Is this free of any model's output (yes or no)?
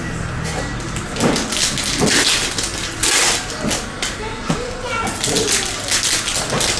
yes